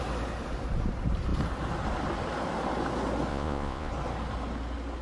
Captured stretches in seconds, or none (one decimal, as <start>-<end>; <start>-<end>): 0.0-3.3; 3.9-5.0

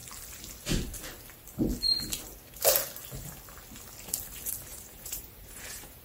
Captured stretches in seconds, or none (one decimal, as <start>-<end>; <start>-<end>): 0.0-4.7

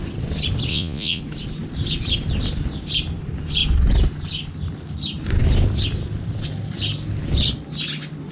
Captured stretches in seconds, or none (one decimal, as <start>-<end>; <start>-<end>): 0.0-0.7; 1.2-8.3

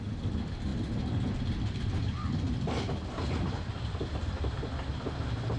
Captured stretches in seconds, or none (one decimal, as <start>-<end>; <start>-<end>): 0.0-5.6

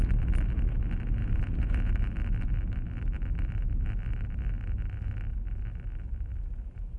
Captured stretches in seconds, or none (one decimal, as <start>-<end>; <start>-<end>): 0.0-1.2; 1.9-7.0